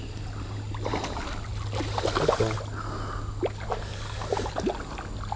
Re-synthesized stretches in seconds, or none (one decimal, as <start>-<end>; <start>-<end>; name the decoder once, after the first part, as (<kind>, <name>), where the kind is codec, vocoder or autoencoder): none